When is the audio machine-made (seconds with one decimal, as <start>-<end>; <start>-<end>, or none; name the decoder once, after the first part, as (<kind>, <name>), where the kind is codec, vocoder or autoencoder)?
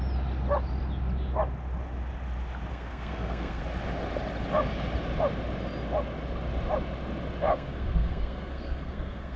2.7-3.6 (codec, SNAC); 7.5-9.4